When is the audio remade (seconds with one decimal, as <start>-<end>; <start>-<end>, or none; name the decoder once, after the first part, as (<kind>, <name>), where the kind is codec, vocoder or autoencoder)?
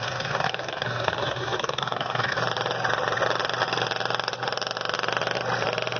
0.0-2.4 (codec, SNAC)